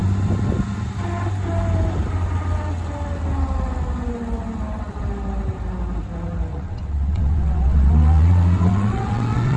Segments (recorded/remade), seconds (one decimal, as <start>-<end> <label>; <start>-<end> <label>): 0.0-6.5 recorded; 6.5-9.6 remade